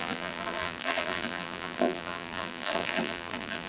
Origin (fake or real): fake